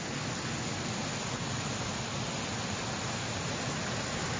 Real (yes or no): yes